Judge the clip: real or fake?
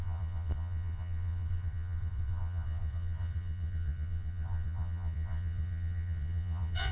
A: fake